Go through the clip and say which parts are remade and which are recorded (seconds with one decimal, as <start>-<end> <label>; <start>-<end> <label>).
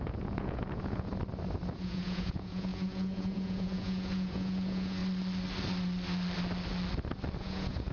0.0-1.1 remade; 1.1-1.7 recorded; 1.7-5.0 remade; 5.0-7.4 recorded; 7.4-7.9 remade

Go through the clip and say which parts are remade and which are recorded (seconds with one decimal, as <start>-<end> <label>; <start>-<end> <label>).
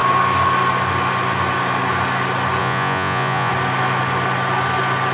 0.0-2.6 recorded; 2.6-3.5 remade; 3.5-5.1 recorded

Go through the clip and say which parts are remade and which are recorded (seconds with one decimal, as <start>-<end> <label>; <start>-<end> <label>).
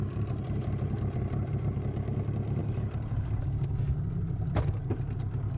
0.0-2.6 recorded; 2.6-3.4 remade; 3.4-5.6 recorded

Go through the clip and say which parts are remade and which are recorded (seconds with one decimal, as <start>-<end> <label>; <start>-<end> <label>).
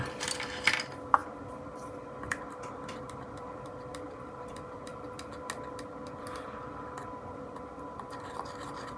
0.0-4.9 remade; 4.9-7.3 recorded; 7.3-9.0 remade